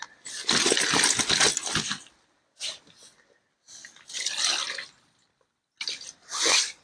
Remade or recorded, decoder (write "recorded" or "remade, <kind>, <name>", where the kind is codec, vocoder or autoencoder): recorded